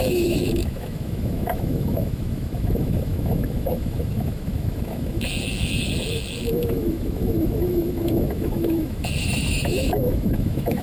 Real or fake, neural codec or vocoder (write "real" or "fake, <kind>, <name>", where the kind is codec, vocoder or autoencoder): fake, autoencoder, DAC-VAE